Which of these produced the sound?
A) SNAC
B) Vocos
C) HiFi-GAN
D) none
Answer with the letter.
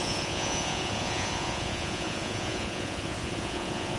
B